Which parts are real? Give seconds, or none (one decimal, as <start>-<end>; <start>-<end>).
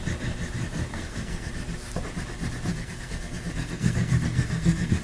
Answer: 0.0-0.9; 1.5-2.7